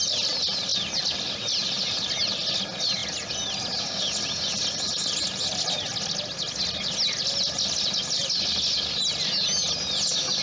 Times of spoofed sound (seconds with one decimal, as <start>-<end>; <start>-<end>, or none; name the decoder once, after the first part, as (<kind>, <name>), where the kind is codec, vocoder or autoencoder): none